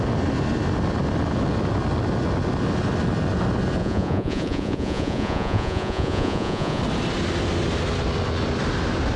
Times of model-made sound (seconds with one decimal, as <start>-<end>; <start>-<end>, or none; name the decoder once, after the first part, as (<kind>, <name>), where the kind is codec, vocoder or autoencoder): 3.8-6.8 (vocoder, Vocos)